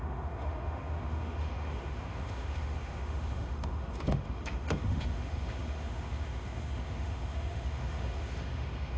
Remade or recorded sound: remade